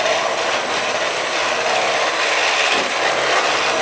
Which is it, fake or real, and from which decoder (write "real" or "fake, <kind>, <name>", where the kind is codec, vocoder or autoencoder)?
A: real